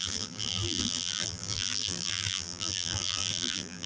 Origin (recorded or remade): remade